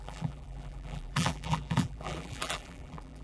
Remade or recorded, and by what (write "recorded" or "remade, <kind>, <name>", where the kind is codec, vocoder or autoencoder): remade, vocoder, BigVGAN v2